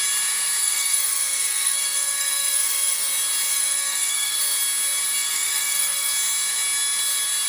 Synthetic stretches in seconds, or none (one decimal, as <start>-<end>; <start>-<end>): 0.6-3.0; 3.5-4.4; 5.2-6.1

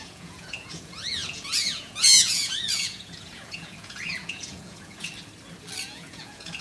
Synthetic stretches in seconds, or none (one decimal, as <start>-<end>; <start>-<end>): 0.0-5.1; 5.8-6.6

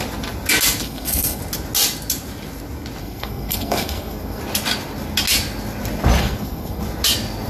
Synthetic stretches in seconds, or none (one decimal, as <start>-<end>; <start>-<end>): 0.8-1.4; 3.0-4.4; 6.2-6.8